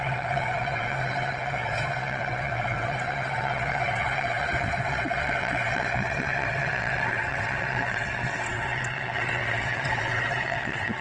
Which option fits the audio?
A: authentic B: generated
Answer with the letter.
B